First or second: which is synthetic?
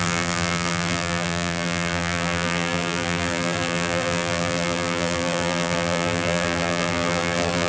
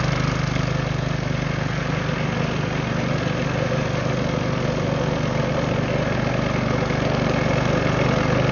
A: first